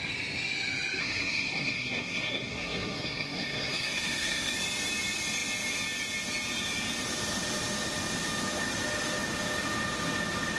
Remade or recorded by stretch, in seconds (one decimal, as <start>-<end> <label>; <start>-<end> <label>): 0.0-1.0 recorded; 1.0-4.5 remade; 4.5-10.6 recorded

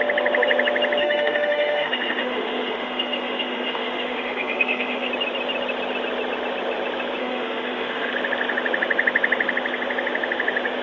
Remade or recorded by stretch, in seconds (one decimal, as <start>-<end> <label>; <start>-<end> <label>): 0.0-1.0 recorded; 1.0-5.1 remade; 5.1-7.2 recorded; 7.2-8.1 remade; 8.1-10.8 recorded

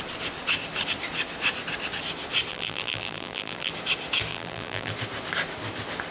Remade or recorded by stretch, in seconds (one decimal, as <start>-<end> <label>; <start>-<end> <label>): 0.0-2.5 recorded; 2.5-3.7 remade; 3.7-4.3 recorded; 4.3-4.9 remade; 4.9-6.1 recorded